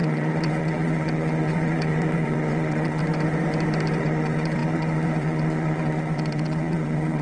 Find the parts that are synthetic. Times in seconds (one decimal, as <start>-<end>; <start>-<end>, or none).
0.0-3.0; 4.0-7.2